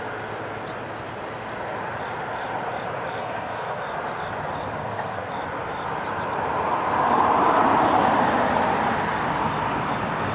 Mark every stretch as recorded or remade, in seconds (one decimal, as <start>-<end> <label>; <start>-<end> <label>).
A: 0.0-3.2 recorded; 3.2-3.8 remade; 3.8-4.8 recorded; 4.8-5.3 remade; 5.3-10.3 recorded